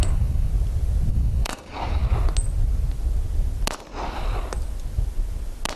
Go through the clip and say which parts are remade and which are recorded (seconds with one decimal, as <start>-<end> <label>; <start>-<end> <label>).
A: 0.0-0.5 remade; 0.5-1.1 recorded; 1.1-2.0 remade; 2.0-5.8 recorded